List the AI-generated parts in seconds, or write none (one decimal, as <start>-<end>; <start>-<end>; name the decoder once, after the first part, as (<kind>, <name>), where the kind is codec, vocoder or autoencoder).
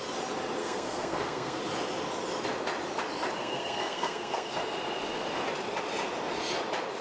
0.6-1.6 (codec, SNAC); 3.4-4.5